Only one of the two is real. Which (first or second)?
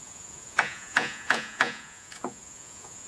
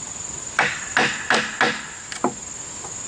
second